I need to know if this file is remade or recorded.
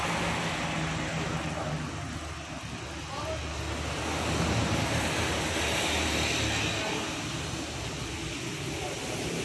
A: recorded